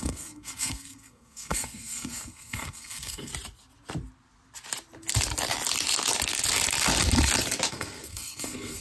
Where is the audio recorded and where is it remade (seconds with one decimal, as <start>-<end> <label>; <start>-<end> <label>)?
0.0-3.3 remade; 3.3-7.7 recorded; 7.7-8.8 remade